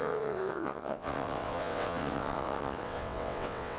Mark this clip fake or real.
fake